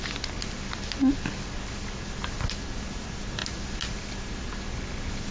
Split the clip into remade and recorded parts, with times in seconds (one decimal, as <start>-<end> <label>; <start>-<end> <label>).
0.0-5.3 recorded